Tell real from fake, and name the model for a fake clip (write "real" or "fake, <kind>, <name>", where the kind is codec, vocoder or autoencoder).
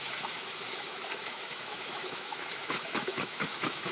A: fake, autoencoder, DAC-VAE